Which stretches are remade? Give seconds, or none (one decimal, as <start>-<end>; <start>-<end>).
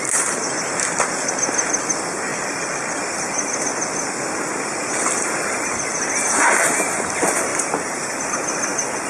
7.5-9.1